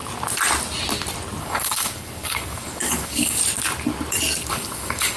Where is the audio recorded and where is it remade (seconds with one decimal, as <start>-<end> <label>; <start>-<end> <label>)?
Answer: 0.0-1.4 recorded; 1.4-3.4 remade; 3.4-4.5 recorded; 4.5-5.2 remade